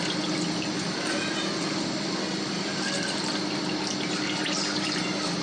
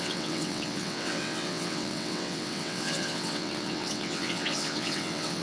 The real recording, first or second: first